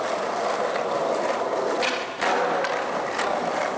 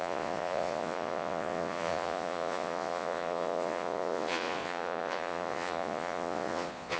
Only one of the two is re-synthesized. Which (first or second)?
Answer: second